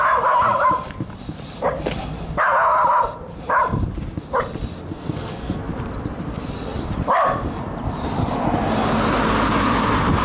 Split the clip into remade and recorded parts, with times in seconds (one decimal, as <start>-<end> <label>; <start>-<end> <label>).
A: 0.0-4.9 recorded; 4.9-5.7 remade; 5.7-10.2 recorded